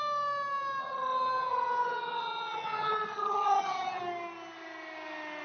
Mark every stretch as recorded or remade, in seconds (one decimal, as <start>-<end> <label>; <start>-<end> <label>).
0.0-0.8 recorded; 0.8-4.0 remade; 4.0-5.4 recorded